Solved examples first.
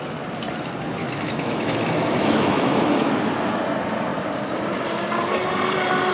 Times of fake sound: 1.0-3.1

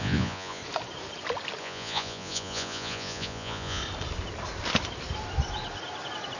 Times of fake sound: 0.0-0.6; 1.6-3.8

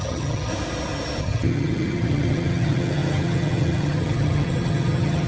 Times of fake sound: 0.0-0.5; 1.2-5.3

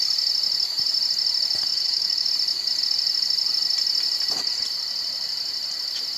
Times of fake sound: 1.7-2.3

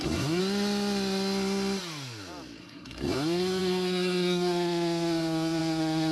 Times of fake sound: 0.0-0.4; 2.6-6.1

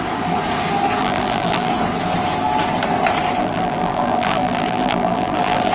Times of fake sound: 1.0-1.7; 3.4-5.7

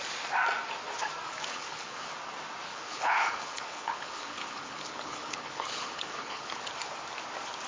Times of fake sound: 1.5-2.1; 2.7-6.5

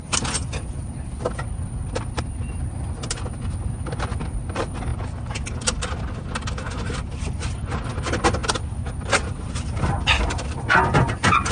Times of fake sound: none